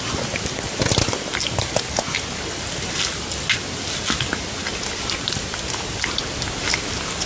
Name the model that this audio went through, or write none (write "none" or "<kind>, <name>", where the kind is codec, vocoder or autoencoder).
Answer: none